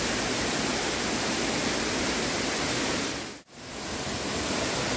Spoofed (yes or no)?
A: yes